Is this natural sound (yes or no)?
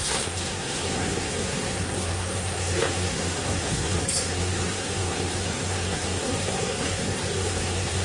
no